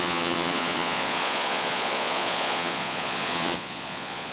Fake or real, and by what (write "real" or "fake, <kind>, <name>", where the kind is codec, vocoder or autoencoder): fake, vocoder, Vocos